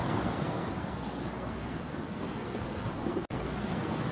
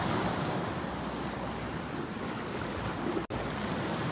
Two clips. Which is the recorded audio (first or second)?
second